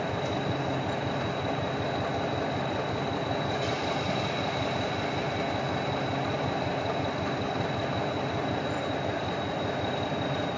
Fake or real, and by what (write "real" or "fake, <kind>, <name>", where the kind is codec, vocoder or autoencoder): real